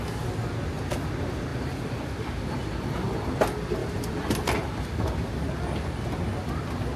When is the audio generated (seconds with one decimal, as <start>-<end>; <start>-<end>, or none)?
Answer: 1.5-2.6; 3.8-4.5